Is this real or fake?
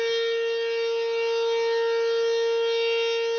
real